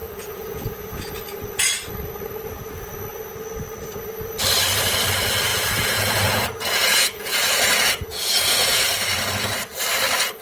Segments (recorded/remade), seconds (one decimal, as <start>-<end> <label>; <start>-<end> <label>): 0.0-1.1 remade; 1.1-5.5 recorded; 5.5-8.8 remade; 8.8-10.4 recorded